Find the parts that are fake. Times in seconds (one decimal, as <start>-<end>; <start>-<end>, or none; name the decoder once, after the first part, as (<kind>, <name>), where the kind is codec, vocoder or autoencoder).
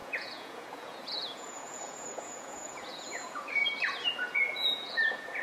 0.0-3.6 (vocoder, Vocos); 4.1-5.4